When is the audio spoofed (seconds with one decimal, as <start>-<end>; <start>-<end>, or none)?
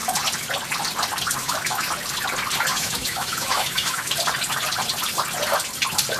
1.4-1.9; 2.7-4.1